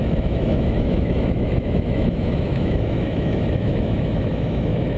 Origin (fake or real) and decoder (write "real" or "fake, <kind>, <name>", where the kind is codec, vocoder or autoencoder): fake, autoencoder, DAC-VAE